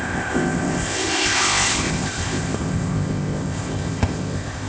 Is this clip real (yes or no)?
no